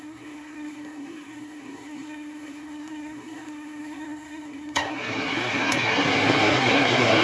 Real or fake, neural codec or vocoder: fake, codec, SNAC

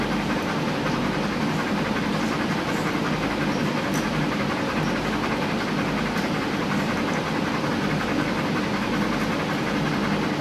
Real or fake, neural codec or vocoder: real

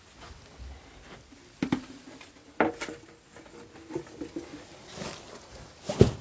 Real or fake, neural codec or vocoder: real